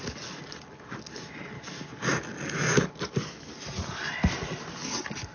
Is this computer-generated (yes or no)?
no